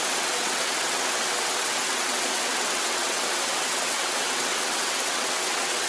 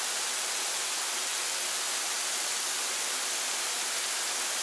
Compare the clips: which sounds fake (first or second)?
first